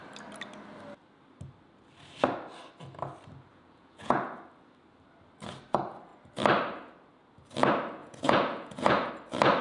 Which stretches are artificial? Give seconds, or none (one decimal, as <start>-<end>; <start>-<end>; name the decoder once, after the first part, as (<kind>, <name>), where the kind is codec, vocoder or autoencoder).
3.5-4.4 (vocoder, Vocos); 8.0-9.1